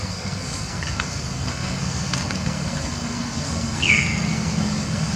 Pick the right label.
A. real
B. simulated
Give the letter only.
B